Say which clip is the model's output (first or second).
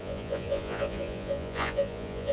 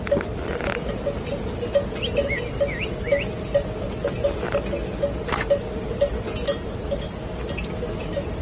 first